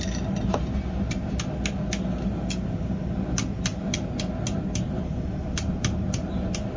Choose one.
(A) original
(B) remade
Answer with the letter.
A